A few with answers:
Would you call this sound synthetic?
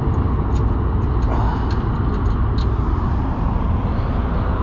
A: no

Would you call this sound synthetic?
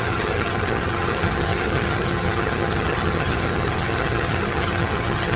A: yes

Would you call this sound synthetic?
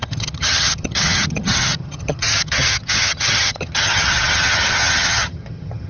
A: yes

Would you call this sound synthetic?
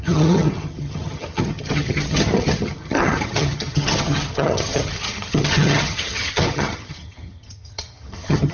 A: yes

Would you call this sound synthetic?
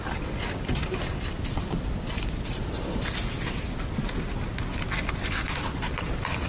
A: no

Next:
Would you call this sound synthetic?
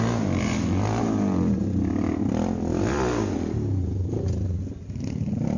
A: no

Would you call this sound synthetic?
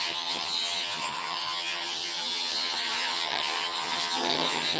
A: yes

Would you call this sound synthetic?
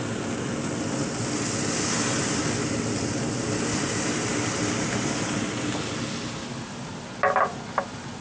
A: no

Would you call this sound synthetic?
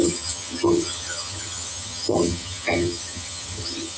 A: yes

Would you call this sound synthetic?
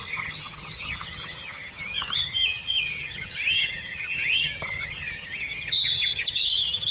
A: yes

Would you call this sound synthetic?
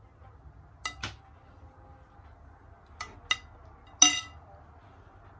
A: no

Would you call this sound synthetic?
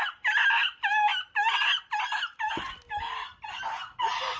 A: no